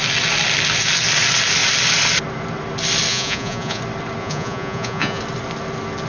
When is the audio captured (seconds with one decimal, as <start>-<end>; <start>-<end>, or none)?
0.0-3.1; 3.8-4.2; 5.2-6.1

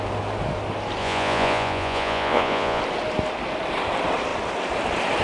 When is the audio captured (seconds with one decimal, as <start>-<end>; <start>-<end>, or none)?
0.0-1.0; 2.8-5.2

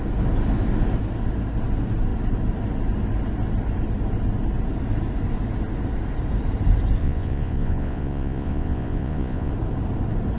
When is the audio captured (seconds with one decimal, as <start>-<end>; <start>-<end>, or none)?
0.0-7.0; 9.5-10.4

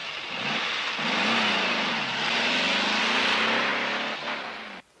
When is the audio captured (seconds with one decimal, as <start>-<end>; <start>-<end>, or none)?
0.0-5.0

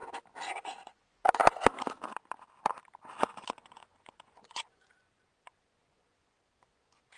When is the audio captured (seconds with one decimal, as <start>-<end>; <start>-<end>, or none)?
0.0-0.5; 1.4-3.2

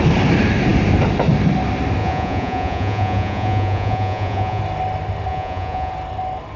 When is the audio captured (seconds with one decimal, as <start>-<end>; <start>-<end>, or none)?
0.0-2.0; 4.6-5.3; 5.9-6.6